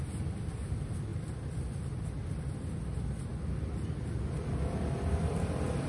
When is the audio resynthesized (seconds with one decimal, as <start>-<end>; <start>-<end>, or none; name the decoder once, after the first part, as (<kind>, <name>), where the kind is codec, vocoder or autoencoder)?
none